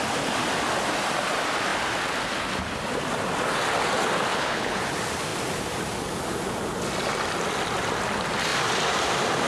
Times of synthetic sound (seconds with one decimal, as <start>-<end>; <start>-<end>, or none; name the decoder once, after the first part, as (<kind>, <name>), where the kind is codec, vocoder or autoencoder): 4.3-4.8 (codec, HILCodec)